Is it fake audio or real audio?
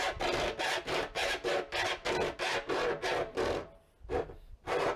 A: real